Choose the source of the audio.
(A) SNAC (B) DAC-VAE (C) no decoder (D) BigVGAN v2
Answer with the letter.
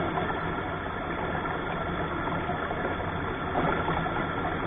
C